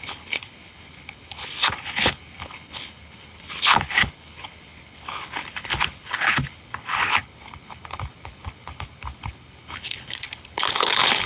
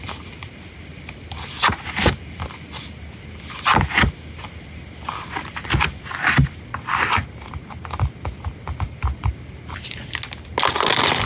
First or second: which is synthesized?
first